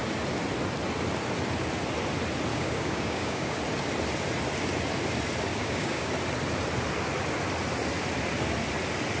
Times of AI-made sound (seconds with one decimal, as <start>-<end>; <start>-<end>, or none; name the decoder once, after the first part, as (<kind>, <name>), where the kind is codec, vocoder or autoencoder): 2.5-3.6 (codec, DAC); 5.5-6.1